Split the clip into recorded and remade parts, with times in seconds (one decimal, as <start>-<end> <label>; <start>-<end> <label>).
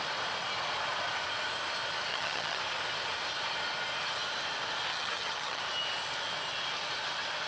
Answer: 0.0-2.1 recorded; 2.1-2.6 remade; 2.6-4.9 recorded; 4.9-5.6 remade; 5.6-7.5 recorded